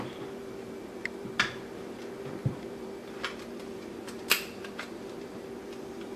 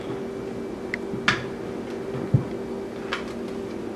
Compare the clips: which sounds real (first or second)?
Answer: second